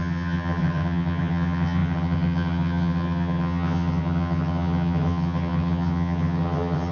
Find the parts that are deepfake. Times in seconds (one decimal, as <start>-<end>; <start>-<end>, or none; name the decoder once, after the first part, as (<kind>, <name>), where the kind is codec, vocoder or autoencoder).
0.0-6.9 (vocoder, HiFi-GAN)